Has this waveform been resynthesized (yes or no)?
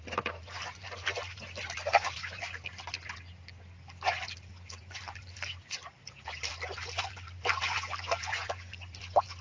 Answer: no